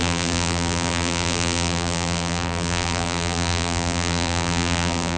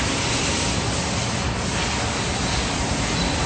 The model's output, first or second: first